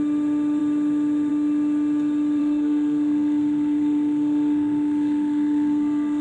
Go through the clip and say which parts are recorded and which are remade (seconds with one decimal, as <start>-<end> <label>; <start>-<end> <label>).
0.0-2.4 recorded; 2.4-6.2 remade